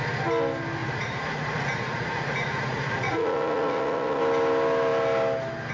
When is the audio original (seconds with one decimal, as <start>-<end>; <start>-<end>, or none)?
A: 0.0-0.8; 4.2-5.7

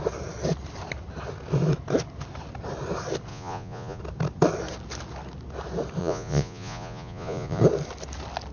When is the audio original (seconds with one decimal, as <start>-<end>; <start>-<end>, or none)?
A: 0.0-3.3; 4.0-6.0; 7.6-8.5

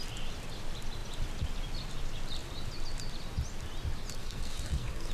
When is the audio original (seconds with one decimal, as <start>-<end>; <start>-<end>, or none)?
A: 0.0-4.2

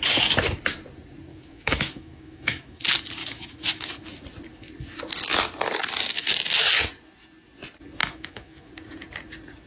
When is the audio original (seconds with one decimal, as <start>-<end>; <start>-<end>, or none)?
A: 0.0-1.3; 2.8-3.2; 3.9-8.0; 8.7-9.7